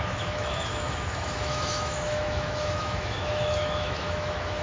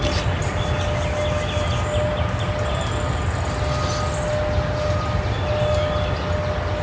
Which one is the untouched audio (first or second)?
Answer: second